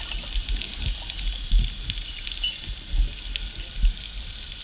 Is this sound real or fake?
real